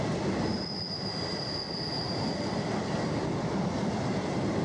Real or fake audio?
real